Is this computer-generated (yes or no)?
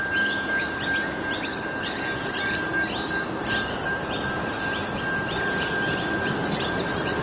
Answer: no